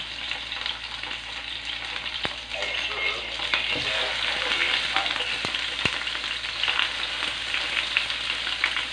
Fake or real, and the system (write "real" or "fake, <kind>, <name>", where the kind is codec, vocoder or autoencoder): real